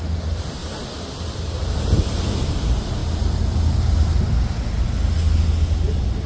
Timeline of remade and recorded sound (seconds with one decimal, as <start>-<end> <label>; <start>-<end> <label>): 0.0-0.6 recorded; 0.6-2.2 remade; 2.2-6.3 recorded